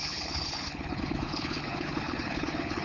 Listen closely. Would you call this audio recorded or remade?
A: remade